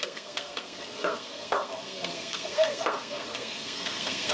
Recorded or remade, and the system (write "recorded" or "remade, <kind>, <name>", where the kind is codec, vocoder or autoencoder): remade, codec, SNAC